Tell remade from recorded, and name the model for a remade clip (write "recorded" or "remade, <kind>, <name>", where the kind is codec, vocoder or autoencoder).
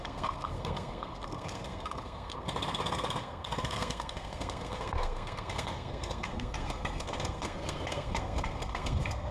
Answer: remade, codec, SNAC